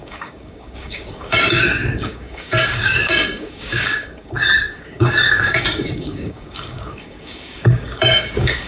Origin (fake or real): fake